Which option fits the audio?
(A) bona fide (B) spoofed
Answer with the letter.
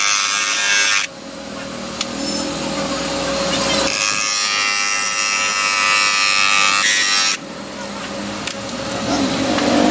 A